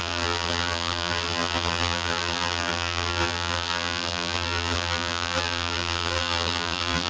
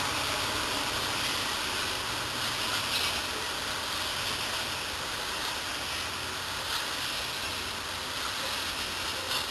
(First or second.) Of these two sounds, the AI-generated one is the first